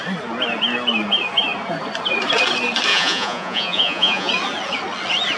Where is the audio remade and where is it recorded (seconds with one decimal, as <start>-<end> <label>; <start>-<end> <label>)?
0.0-2.9 recorded; 2.9-4.3 remade; 4.3-5.4 recorded